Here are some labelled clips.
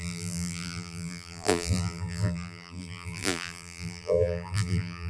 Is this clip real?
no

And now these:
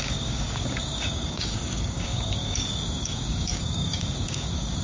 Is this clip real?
no